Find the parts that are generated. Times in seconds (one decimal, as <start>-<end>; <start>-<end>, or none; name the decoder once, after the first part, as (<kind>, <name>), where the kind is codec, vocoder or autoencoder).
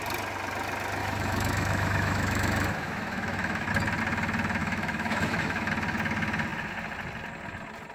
1.0-3.7 (autoencoder, DAC-VAE); 4.6-5.7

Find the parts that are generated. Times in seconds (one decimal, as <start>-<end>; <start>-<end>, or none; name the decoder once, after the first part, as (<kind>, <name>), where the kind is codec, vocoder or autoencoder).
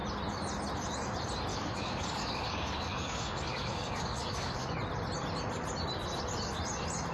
1.5-4.7 (codec, DAC)